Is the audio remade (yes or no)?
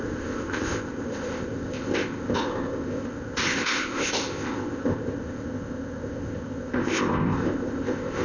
yes